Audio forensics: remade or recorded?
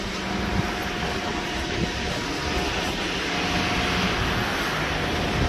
recorded